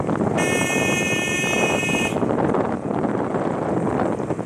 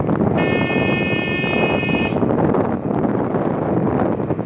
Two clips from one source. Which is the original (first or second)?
second